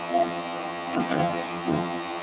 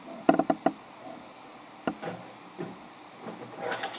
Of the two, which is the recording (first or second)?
second